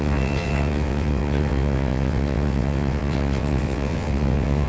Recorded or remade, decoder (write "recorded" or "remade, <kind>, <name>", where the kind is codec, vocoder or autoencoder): remade, vocoder, WaveNeXt